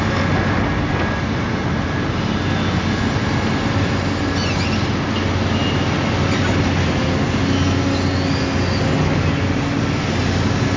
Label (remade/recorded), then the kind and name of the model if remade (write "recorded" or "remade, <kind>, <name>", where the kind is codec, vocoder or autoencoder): recorded